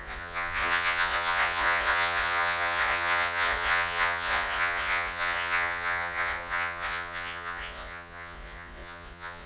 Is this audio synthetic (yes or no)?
yes